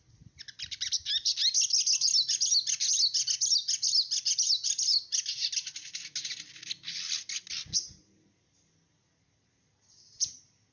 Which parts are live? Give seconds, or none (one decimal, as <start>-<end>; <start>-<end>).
0.0-10.7